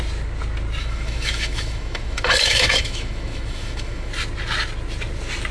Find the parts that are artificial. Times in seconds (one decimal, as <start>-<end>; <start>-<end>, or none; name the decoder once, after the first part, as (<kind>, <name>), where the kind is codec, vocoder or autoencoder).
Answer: 0.8-4.1 (autoencoder, DAC-VAE)